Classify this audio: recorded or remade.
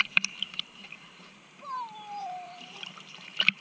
remade